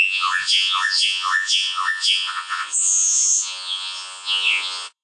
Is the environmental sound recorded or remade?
remade